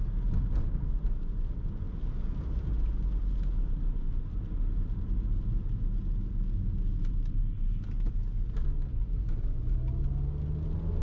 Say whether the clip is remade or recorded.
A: recorded